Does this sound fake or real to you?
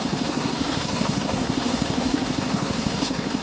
fake